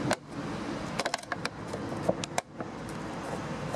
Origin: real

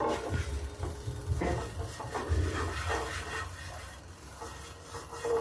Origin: real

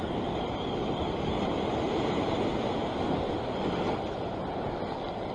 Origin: real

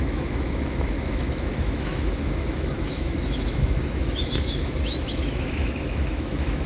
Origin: fake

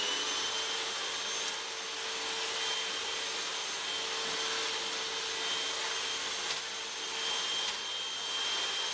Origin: real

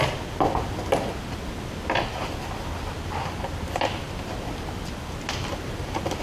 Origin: real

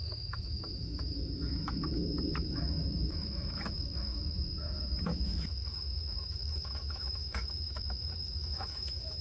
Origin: fake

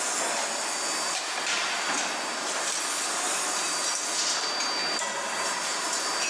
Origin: real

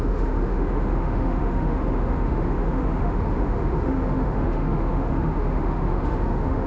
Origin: fake